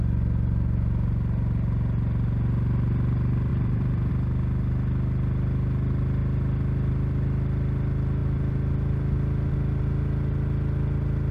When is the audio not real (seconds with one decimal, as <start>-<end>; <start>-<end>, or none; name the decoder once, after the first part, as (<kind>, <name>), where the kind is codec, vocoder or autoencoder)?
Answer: 3.5-4.1 (vocoder, BigVGAN v2)